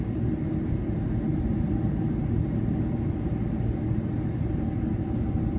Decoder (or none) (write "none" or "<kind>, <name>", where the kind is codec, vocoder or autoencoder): none